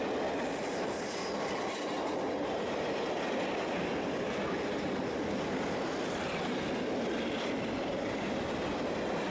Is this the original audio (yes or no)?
yes